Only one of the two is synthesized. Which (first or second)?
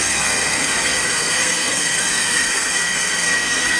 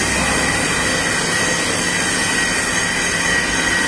first